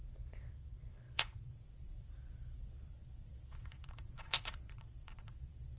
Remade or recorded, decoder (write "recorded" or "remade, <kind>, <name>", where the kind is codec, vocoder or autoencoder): remade, vocoder, Vocos